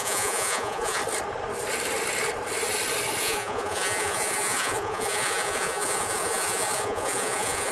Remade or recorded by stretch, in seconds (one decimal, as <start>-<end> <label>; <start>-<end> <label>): 0.0-1.0 remade; 1.0-3.2 recorded; 3.2-7.7 remade